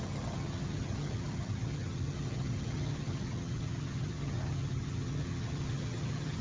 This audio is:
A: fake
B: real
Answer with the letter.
A